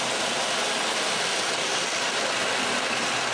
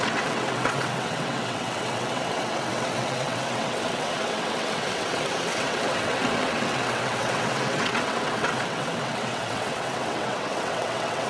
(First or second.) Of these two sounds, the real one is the first